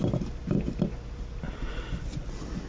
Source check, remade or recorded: recorded